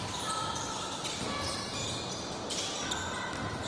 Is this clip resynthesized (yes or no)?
no